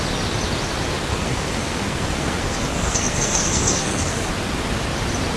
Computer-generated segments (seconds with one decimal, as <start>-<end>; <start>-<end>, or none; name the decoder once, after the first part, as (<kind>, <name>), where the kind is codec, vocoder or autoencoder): 1.1-4.3 (codec, SNAC)